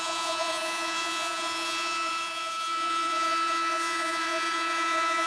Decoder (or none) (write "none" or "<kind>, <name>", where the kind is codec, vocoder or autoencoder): vocoder, Vocos